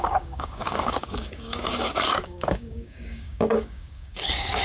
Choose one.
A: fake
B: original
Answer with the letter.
A